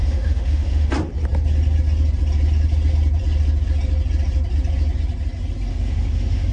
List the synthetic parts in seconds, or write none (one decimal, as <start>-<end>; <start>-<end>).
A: 0.0-0.9; 5.7-6.5